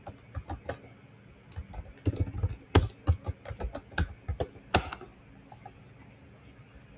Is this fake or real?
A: real